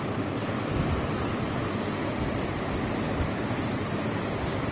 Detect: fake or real real